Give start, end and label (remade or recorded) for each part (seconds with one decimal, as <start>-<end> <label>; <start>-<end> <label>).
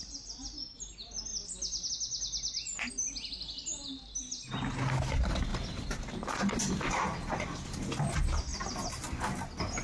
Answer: 0.0-5.5 recorded; 5.5-6.6 remade; 6.6-8.5 recorded; 8.5-9.4 remade; 9.4-9.8 recorded